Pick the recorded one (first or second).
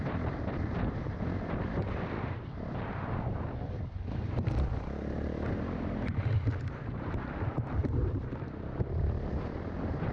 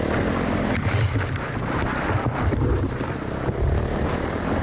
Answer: second